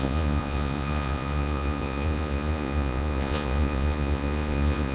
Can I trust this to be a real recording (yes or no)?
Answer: no